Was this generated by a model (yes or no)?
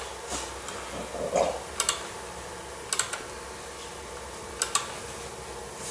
no